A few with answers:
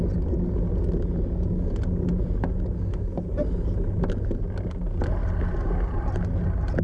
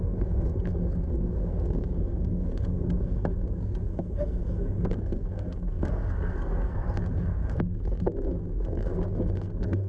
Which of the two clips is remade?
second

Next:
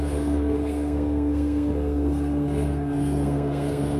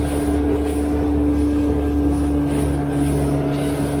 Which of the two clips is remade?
first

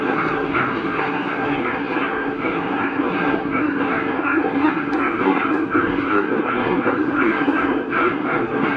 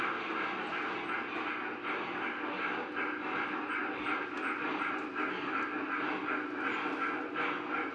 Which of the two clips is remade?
first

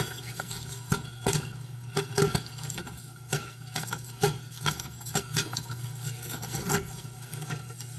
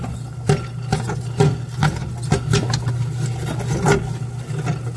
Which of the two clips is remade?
first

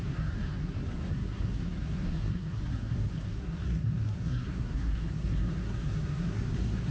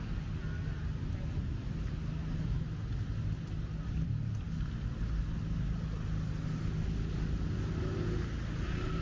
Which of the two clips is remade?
first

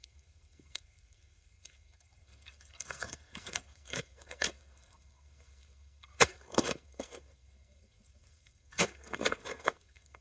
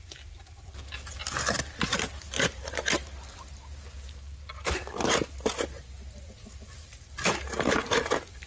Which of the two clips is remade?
first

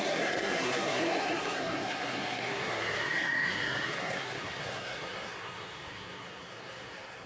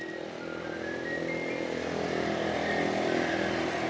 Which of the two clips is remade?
first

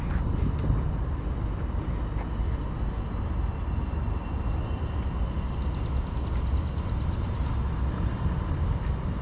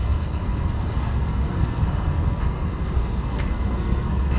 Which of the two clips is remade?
second